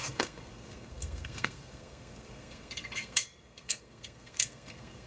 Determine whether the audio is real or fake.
fake